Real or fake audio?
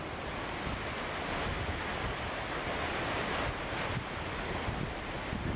real